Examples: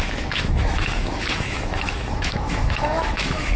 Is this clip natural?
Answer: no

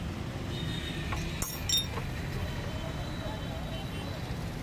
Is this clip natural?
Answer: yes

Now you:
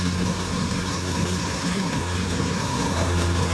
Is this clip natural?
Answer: no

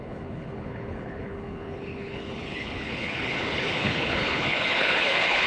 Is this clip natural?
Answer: no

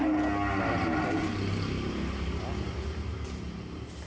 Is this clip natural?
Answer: yes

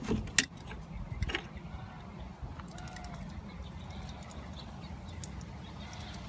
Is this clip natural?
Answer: yes